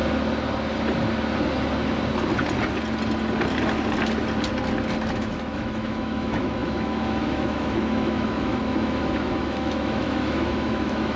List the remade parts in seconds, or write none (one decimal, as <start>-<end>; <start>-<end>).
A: 5.1-11.2